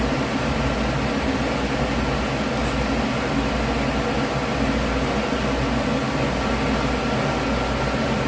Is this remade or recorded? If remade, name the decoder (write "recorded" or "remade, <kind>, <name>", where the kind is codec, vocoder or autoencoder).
recorded